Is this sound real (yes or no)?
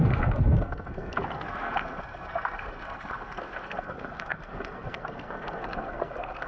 no